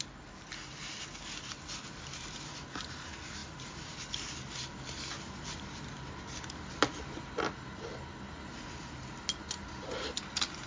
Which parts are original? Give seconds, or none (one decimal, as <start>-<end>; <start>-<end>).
0.0-10.7